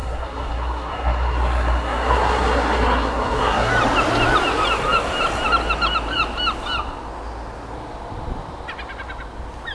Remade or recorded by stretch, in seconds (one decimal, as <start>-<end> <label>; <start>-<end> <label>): 0.0-3.7 remade; 3.7-9.7 recorded